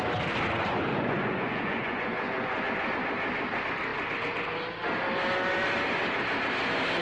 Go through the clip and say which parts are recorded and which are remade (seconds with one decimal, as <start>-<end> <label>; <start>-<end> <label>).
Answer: 0.0-0.9 recorded; 0.9-2.9 remade; 2.9-7.0 recorded